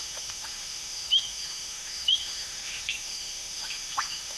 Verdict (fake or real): fake